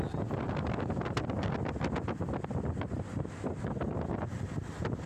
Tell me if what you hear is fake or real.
real